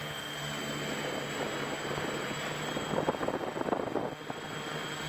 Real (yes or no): yes